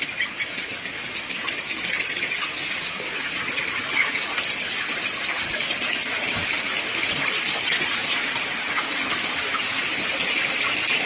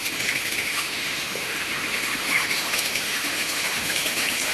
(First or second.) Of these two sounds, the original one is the first